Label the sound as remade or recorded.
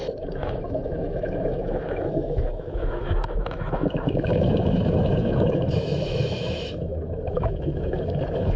remade